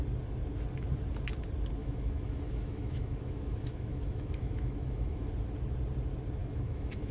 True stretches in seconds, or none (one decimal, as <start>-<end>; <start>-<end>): 0.0-1.8; 5.3-6.4